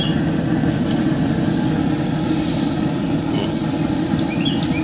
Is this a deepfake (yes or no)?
no